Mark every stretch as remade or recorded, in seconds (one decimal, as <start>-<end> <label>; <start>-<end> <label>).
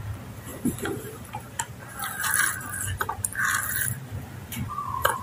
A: 0.0-5.2 recorded